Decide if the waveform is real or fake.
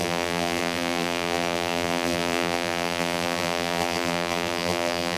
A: fake